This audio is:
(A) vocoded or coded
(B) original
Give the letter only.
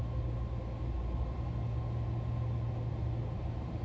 B